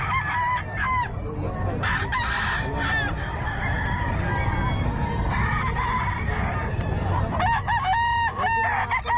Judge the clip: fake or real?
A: real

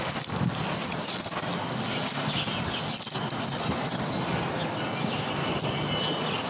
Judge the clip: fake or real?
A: real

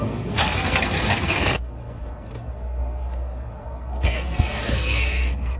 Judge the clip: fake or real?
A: fake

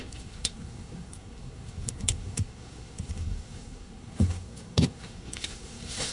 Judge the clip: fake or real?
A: fake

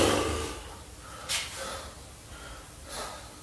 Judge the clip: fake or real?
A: real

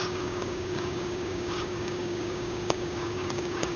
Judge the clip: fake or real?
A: fake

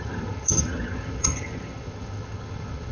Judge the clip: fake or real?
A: fake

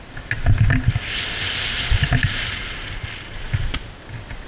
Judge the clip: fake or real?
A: real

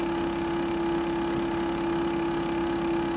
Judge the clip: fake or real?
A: real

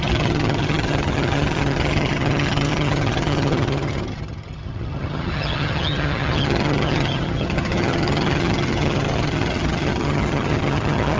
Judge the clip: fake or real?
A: fake